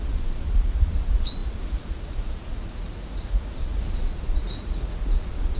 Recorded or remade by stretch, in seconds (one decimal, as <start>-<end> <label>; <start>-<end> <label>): 0.0-5.6 remade